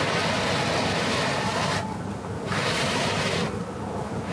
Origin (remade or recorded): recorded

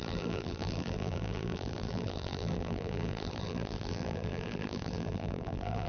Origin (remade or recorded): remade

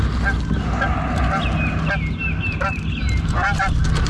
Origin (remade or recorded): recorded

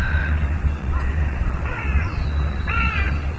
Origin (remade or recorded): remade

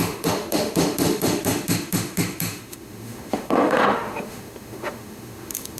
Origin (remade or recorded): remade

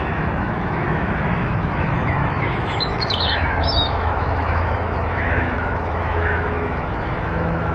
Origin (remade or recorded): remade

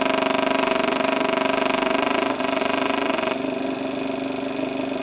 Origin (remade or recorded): recorded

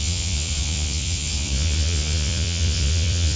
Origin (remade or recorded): remade